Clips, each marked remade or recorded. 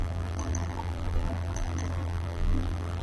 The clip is remade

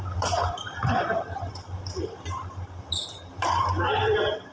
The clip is remade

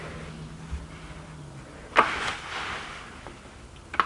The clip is recorded